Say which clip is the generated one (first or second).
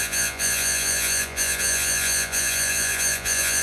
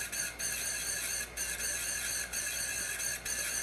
first